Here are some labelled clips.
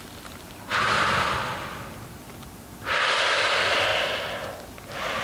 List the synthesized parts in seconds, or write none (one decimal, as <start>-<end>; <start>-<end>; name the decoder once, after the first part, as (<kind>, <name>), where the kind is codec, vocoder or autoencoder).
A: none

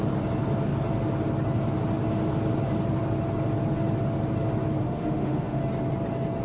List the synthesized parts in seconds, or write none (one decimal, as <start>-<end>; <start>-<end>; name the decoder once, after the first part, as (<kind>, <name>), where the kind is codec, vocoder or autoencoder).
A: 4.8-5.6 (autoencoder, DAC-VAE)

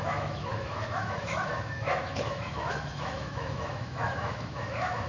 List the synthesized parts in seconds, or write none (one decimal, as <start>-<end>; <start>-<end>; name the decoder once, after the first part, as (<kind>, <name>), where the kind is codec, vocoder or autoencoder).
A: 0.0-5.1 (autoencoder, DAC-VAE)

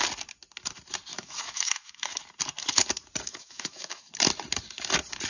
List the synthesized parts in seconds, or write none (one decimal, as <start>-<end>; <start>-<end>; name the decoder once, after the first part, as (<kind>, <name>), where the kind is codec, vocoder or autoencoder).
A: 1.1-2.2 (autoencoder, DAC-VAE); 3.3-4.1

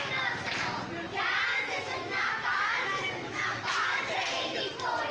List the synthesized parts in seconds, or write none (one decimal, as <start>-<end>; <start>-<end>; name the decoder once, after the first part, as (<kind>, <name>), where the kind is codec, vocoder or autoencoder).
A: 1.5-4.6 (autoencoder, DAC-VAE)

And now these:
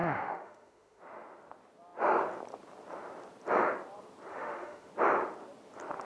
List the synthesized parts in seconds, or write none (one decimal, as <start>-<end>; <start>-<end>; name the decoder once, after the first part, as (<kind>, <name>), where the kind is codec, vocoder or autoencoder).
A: 0.0-1.0 (autoencoder, DAC-VAE); 4.3-4.9

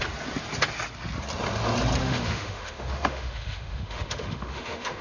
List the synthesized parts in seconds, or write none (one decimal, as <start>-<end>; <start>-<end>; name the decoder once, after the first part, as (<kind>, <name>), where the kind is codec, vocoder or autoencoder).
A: 2.0-5.0 (autoencoder, DAC-VAE)

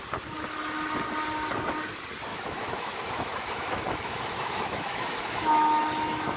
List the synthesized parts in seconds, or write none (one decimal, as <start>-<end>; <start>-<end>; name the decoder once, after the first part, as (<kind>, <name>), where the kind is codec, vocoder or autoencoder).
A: 2.3-6.4 (autoencoder, DAC-VAE)